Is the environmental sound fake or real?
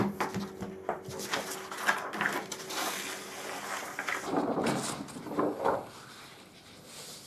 real